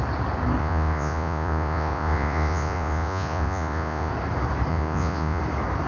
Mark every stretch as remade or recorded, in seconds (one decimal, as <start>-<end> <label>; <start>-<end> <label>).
0.0-0.6 recorded; 0.6-4.1 remade; 4.1-4.7 recorded; 4.7-5.4 remade; 5.4-5.9 recorded